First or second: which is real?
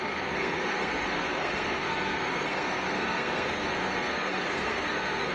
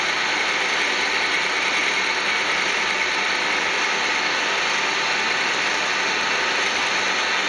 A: second